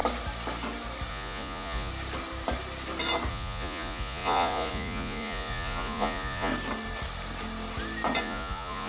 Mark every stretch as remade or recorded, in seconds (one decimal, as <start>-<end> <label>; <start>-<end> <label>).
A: 0.0-1.1 recorded; 1.1-1.9 remade; 1.9-3.3 recorded; 3.3-6.5 remade; 6.5-8.2 recorded; 8.2-8.9 remade